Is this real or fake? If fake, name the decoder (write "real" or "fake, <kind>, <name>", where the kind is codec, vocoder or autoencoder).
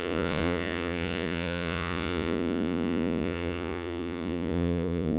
fake, vocoder, Vocos